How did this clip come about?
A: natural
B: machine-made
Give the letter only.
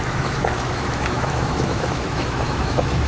B